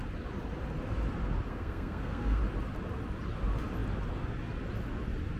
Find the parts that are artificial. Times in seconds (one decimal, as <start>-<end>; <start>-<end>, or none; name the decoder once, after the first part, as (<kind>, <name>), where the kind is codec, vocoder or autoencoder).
1.5-2.4 (codec, SNAC)